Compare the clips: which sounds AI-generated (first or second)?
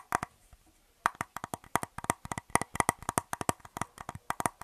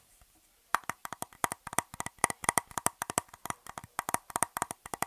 second